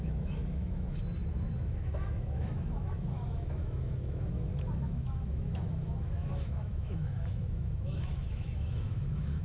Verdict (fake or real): fake